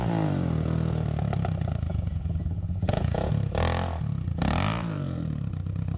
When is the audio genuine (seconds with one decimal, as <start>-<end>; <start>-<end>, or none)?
0.0-1.9; 3.3-6.0